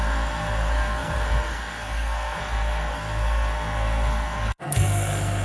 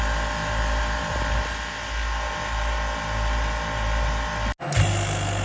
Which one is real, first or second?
second